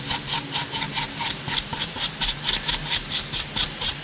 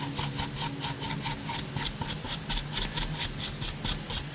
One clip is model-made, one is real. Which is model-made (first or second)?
first